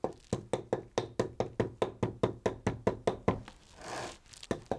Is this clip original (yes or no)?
yes